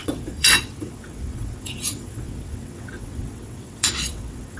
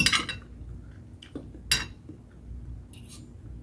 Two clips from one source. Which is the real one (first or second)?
second